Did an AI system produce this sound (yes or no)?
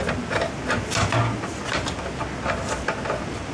no